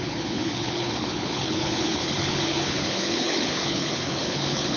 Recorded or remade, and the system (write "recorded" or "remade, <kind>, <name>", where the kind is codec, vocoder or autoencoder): remade, codec, HILCodec